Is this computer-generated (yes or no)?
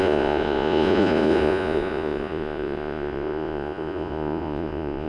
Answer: yes